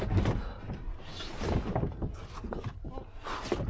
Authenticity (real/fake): real